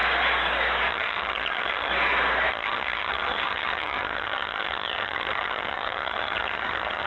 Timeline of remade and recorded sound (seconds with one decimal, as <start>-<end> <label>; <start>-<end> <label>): 0.0-0.9 recorded; 0.9-1.9 remade; 1.9-2.5 recorded; 2.5-7.1 remade